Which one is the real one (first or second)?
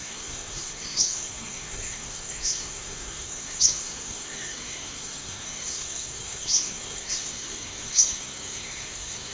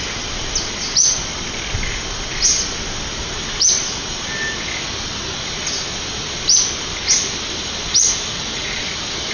second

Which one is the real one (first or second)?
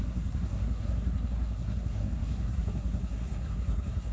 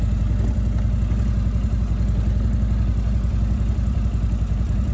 second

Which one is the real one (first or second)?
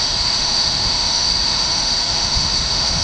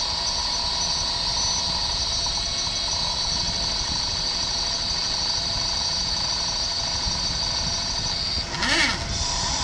second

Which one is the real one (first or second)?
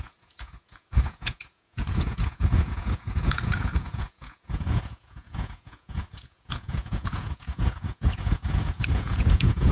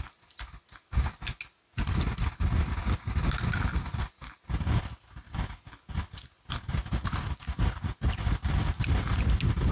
second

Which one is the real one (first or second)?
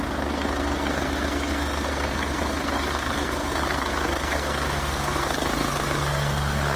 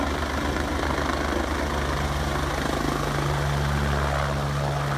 second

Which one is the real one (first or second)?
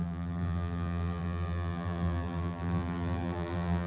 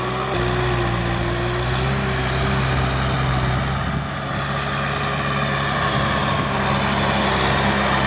second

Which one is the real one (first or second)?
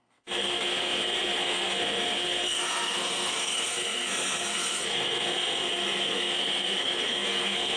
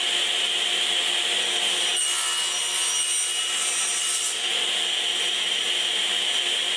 second